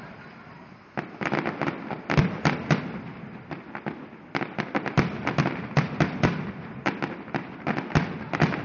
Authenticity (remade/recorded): recorded